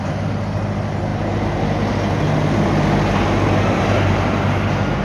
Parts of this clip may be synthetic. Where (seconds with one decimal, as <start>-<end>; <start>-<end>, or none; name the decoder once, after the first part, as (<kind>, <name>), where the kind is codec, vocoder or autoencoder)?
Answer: none